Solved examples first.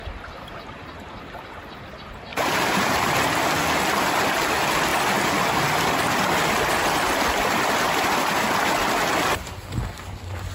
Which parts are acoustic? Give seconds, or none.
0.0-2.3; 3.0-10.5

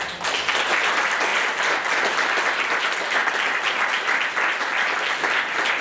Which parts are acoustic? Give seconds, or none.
0.0-5.8

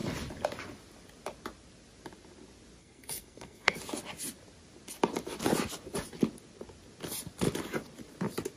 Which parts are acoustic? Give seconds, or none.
0.0-2.8; 3.8-8.6